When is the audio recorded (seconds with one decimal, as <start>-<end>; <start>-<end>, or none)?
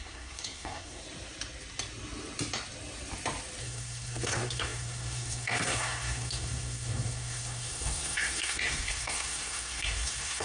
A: 1.0-3.6